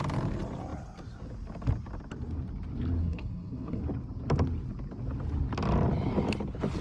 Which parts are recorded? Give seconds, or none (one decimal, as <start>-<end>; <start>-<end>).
0.0-3.0; 3.8-6.8